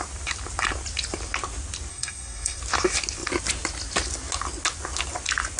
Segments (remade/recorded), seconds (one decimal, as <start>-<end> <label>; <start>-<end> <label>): 0.0-1.9 recorded; 1.9-2.6 remade; 2.6-5.6 recorded